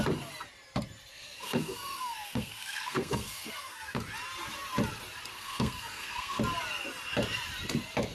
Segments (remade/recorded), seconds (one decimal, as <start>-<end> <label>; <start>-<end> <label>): 0.0-1.1 recorded; 1.1-4.0 remade; 4.0-5.3 recorded; 5.3-6.4 remade; 6.4-8.1 recorded